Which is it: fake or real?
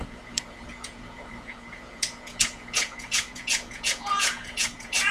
fake